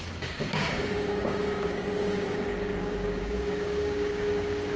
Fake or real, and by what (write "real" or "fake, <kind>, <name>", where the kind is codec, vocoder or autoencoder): fake, codec, DAC